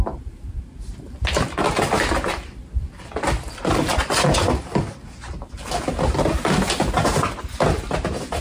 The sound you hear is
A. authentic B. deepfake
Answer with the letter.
A